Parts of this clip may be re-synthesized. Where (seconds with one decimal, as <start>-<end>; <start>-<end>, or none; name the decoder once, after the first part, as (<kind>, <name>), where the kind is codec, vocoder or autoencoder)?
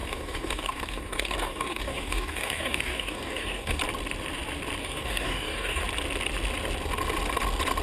0.0-3.8 (codec, DAC); 4.8-5.8